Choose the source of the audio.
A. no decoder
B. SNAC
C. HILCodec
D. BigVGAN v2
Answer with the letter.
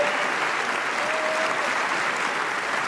A